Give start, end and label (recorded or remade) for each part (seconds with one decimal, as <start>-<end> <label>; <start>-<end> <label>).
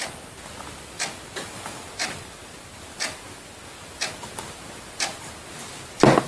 0.0-6.3 recorded